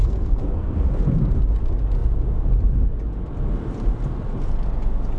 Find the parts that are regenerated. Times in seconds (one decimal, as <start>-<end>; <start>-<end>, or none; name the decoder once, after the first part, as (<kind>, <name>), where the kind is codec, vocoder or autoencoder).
0.0-0.9 (codec, SNAC)